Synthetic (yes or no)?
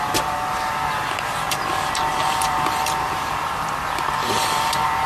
yes